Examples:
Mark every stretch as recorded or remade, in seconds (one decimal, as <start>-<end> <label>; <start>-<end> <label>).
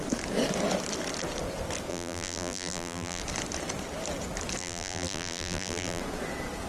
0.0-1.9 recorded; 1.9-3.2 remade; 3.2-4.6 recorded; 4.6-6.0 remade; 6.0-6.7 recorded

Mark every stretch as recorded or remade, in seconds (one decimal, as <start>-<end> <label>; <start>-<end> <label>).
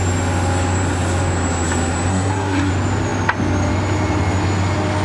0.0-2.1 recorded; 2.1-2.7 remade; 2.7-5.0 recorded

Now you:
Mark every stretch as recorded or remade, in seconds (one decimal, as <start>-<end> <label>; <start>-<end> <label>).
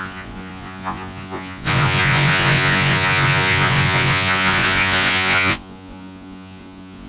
0.0-7.1 remade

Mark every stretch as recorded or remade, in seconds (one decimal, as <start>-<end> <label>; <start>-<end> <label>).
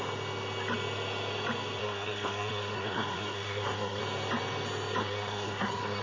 0.0-1.8 recorded; 1.8-4.0 remade; 4.0-5.0 recorded; 5.0-6.0 remade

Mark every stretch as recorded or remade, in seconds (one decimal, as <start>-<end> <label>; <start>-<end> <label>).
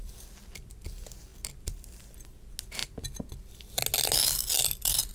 0.0-5.1 recorded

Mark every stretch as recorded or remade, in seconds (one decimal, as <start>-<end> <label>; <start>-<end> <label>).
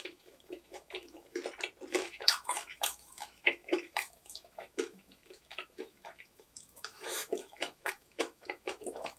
0.0-1.4 remade; 1.4-1.9 recorded; 1.9-9.2 remade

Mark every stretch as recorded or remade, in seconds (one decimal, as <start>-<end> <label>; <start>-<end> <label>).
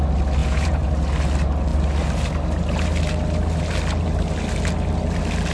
0.0-0.4 recorded; 0.4-0.9 remade; 0.9-5.5 recorded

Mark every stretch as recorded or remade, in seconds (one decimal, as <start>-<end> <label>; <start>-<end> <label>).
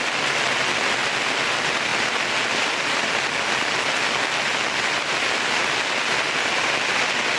0.0-7.4 recorded